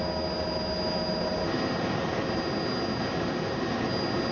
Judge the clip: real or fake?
real